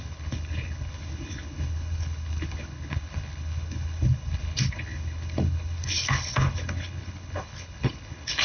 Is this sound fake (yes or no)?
yes